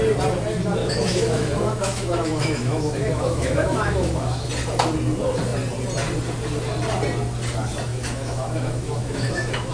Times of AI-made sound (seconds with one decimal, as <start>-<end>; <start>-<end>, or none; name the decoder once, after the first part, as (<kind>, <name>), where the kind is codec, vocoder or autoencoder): 0.8-4.5 (autoencoder, DAC-VAE); 7.9-9.7